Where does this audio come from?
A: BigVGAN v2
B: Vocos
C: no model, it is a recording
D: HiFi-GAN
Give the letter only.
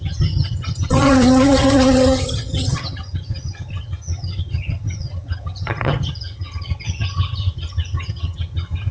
D